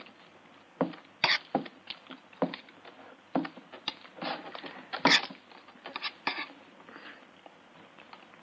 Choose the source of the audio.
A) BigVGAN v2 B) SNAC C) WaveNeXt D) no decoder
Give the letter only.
D